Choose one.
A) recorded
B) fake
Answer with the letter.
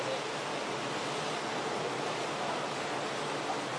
A